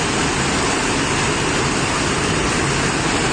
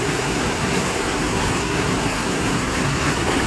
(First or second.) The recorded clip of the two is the first